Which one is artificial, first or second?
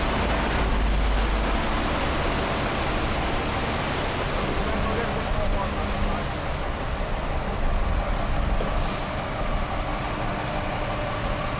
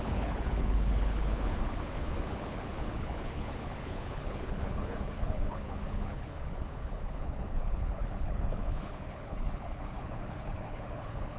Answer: second